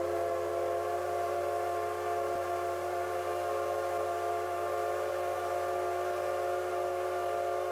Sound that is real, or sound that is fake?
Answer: real